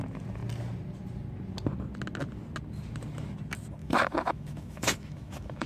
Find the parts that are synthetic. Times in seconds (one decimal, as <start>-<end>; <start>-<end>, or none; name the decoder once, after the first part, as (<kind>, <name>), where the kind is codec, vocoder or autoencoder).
3.8-5.7 (autoencoder, DAC-VAE)